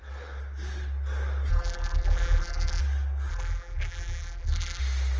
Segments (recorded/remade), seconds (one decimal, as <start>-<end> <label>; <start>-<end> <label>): 0.0-1.5 recorded; 1.5-2.8 remade; 2.8-3.3 recorded; 3.3-4.8 remade; 4.8-5.2 recorded